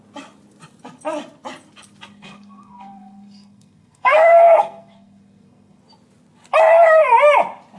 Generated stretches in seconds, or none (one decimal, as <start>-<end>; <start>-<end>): 2.1-5.8